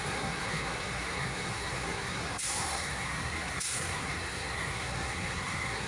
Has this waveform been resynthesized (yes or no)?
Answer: yes